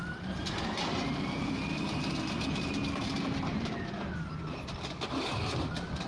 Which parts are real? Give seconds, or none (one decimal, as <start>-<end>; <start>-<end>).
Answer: 3.7-6.1